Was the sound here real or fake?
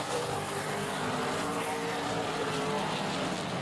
real